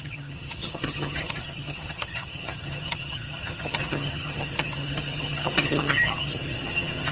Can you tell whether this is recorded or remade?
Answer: remade